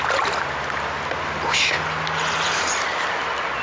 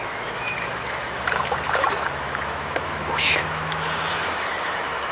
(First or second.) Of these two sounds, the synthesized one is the second